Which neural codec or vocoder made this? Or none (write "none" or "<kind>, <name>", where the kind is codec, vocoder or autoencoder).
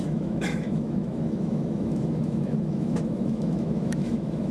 autoencoder, DAC-VAE